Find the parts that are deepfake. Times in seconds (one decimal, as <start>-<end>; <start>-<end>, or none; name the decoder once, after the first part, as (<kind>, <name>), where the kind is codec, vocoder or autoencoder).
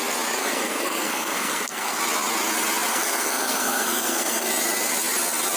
0.4-2.0 (codec, SNAC); 2.9-4.5